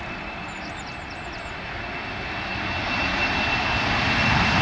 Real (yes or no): yes